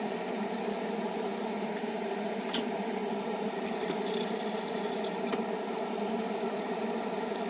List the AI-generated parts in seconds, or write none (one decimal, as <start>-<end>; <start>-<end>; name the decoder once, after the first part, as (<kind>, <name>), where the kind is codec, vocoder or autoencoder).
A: 0.0-7.5 (vocoder, BigVGAN v2)